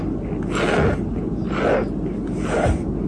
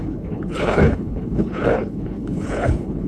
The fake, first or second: second